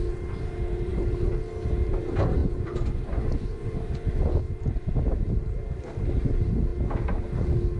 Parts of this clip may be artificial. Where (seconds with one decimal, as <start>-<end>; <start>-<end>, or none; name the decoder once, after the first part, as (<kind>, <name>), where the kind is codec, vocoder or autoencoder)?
2.4-4.4 (vocoder, Vocos)